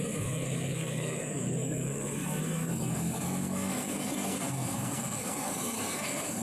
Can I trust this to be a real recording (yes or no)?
no